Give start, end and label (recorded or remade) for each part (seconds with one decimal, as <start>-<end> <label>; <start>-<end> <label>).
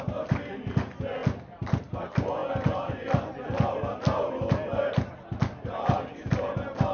0.0-6.9 recorded